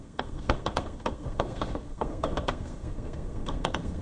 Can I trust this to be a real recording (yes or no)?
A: no